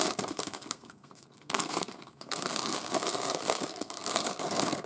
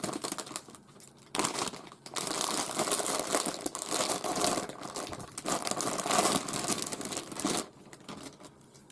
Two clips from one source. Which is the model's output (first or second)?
first